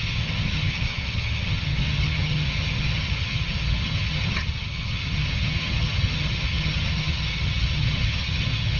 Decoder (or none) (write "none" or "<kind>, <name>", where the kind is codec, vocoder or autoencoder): vocoder, HiFi-GAN